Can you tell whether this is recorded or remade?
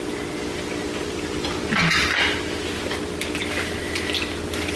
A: recorded